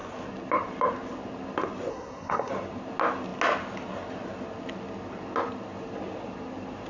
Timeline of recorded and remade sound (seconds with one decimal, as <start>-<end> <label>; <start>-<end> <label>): 0.0-1.9 recorded; 1.9-2.5 remade; 2.5-6.9 recorded